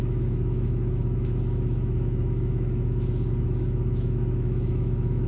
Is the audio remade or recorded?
remade